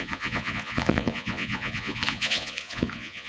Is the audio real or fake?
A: fake